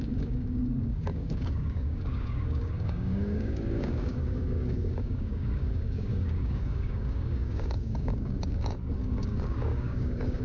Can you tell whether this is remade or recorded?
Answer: remade